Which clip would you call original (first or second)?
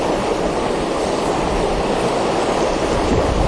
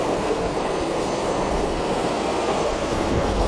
first